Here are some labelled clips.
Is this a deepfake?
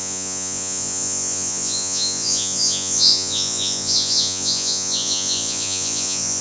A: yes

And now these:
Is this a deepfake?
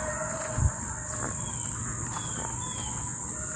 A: no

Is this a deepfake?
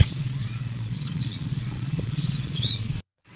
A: yes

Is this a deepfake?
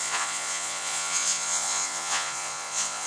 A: yes